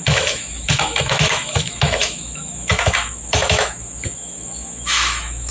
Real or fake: fake